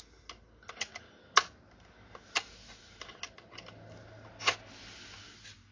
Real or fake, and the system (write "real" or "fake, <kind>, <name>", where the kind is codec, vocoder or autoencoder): real